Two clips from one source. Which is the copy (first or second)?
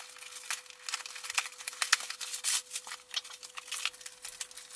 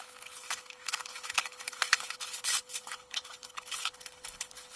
second